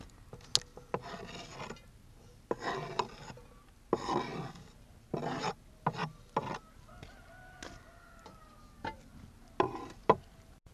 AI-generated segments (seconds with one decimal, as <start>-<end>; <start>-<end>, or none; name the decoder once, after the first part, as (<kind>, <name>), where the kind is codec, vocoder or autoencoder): none